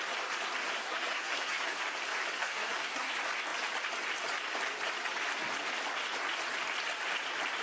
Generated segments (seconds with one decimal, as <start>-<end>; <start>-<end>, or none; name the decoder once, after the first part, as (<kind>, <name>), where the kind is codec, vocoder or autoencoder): 0.8-1.8 (codec, SNAC); 2.4-3.1